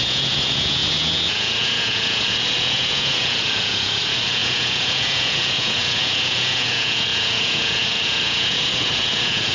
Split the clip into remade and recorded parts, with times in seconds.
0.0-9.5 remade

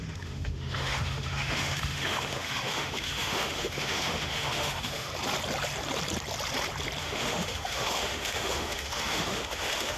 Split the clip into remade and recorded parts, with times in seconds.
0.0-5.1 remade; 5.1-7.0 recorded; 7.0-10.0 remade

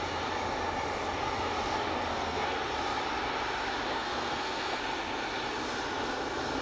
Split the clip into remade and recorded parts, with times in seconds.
0.0-2.1 recorded; 2.1-2.6 remade; 2.6-3.9 recorded; 3.9-4.8 remade; 4.8-6.6 recorded

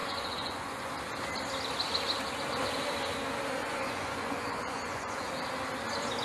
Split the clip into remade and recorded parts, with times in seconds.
0.0-0.9 remade; 0.9-3.6 recorded; 3.6-5.3 remade; 5.3-6.2 recorded

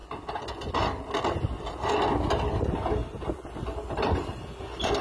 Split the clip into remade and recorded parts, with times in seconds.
0.0-5.0 recorded